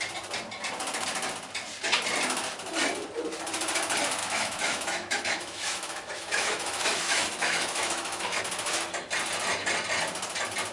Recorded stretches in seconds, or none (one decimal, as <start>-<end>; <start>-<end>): 0.0-4.2; 8.4-10.7